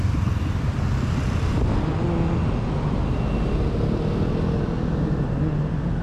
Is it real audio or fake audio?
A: real